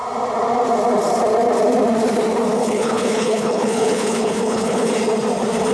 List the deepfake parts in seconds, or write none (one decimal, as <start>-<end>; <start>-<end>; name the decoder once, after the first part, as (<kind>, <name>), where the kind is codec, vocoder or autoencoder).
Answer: 2.6-4.9 (codec, HILCodec)